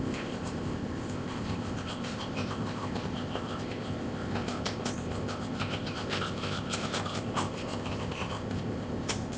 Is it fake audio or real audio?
fake